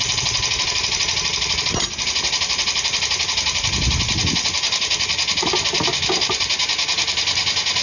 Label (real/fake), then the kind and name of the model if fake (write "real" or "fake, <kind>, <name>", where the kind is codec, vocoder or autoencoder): real